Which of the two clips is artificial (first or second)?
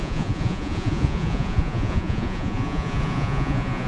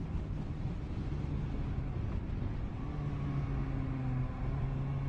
first